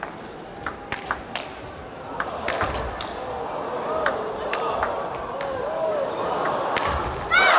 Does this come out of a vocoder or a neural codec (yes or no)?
no